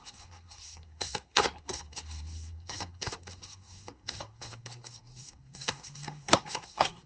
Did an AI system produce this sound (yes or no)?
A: yes